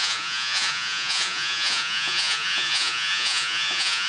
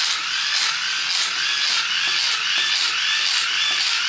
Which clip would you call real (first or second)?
second